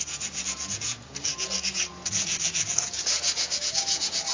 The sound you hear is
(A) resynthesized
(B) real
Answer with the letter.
A